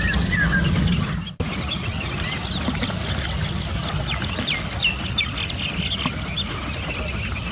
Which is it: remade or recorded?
recorded